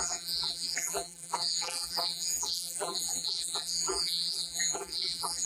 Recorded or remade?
remade